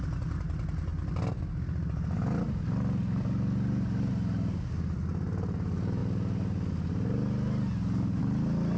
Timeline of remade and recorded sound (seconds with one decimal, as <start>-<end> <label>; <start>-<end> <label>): 0.0-8.8 recorded